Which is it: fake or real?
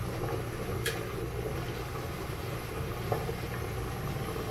real